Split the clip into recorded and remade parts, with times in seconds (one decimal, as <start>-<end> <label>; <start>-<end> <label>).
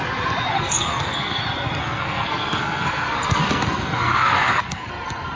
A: 0.0-0.5 recorded; 0.5-1.4 remade; 1.4-1.8 recorded; 1.8-4.9 remade; 4.9-5.4 recorded